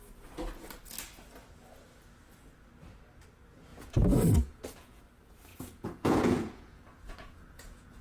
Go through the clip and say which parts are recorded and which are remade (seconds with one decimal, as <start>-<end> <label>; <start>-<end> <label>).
0.0-3.7 recorded; 3.7-5.0 remade; 5.0-5.5 recorded; 5.5-8.0 remade